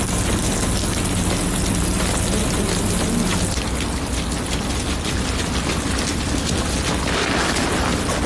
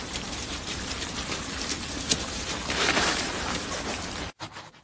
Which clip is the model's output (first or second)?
second